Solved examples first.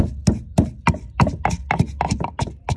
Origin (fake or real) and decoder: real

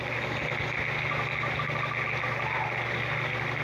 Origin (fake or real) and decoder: real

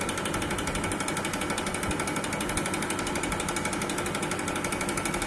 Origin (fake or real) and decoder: real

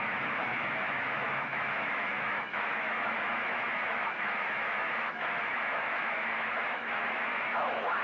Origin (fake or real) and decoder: fake, autoencoder, DAC-VAE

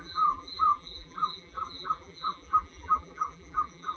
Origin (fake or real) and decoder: fake, vocoder, BigVGAN v2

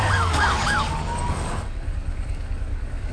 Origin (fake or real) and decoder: fake, codec, DAC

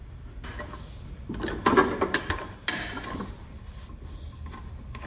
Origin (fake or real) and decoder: real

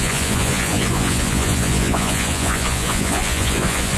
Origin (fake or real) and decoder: fake, vocoder, Vocos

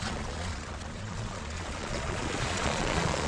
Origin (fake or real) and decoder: fake, vocoder, Vocos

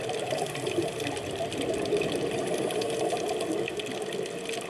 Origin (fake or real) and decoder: real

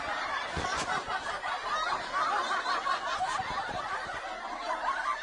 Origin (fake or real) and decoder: real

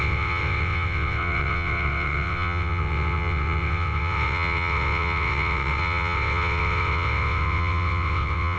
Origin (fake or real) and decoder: fake, vocoder, WaveNeXt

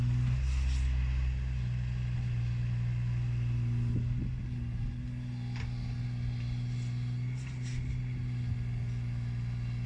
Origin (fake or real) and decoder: real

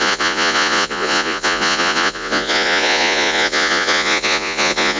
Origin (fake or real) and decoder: fake, vocoder, Vocos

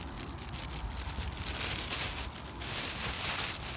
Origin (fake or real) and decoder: real